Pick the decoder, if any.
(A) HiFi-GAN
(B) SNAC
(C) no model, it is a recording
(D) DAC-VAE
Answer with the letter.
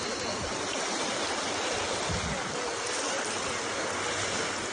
C